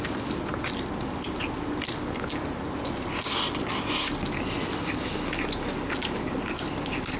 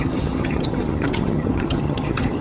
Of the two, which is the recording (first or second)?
first